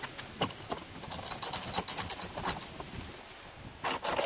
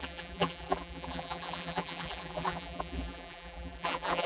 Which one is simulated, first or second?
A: second